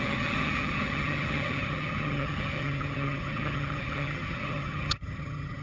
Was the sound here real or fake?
fake